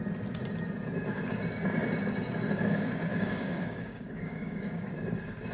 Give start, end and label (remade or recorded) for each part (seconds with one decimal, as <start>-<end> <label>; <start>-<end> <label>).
0.0-3.1 recorded; 3.1-4.9 remade; 4.9-5.5 recorded